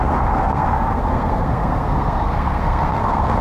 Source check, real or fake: fake